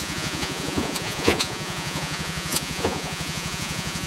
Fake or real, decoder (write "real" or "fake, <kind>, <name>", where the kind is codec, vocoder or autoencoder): fake, vocoder, Vocos